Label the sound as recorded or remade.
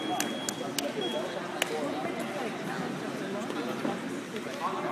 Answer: recorded